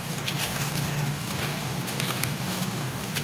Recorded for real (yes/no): no